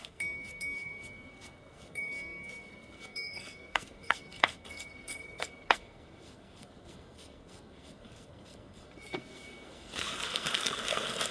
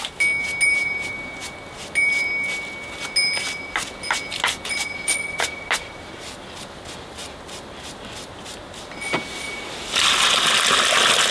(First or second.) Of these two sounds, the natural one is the second